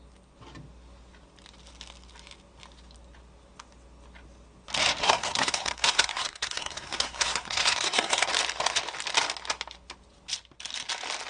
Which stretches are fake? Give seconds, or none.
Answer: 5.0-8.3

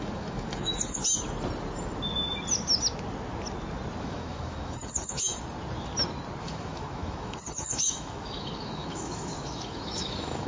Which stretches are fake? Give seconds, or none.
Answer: 0.0-1.0; 4.0-5.3; 6.4-10.5

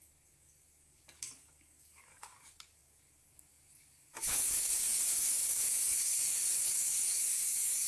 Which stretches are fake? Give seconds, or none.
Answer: 0.0-7.9

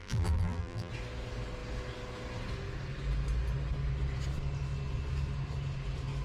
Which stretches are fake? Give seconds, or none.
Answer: 0.0-0.9

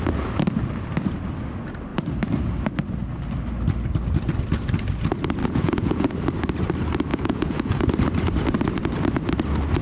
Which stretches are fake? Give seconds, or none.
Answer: 5.4-6.1; 7.1-7.8